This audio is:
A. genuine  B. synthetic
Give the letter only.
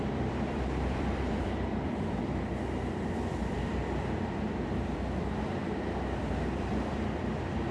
B